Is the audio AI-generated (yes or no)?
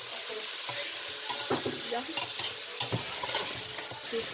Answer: no